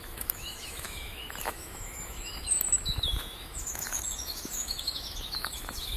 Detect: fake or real fake